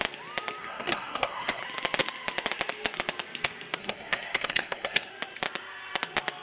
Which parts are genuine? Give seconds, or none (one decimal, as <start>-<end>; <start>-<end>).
0.0-0.6; 1.6-3.8; 5.1-6.4